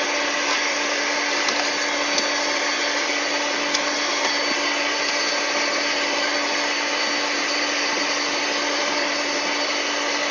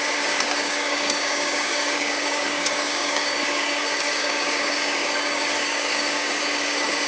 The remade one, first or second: second